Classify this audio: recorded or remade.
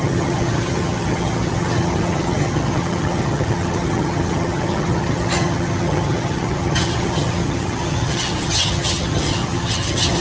remade